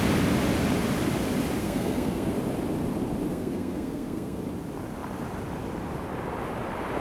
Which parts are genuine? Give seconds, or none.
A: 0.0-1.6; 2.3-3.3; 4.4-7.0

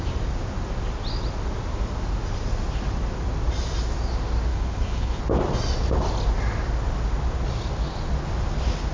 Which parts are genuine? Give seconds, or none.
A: 0.0-4.5; 5.2-8.9